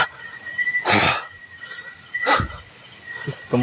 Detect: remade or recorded recorded